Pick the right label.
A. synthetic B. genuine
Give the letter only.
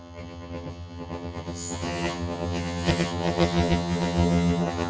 A